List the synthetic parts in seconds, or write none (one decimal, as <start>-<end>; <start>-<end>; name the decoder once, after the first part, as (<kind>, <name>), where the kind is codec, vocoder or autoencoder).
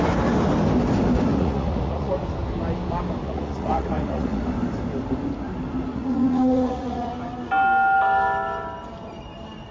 1.3-2.1 (vocoder, Vocos); 3.2-4.4; 5.9-7.1